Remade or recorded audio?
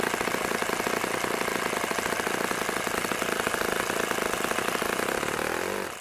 recorded